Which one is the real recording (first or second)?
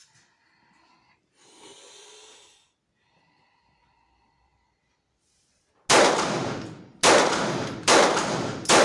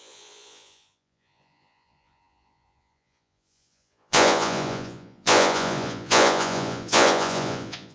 first